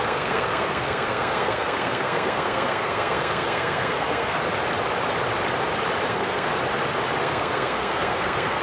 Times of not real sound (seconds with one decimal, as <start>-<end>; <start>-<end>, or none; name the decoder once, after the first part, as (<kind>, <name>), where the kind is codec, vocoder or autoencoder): 0.0-4.4 (codec, SNAC); 6.1-6.5; 7.2-8.6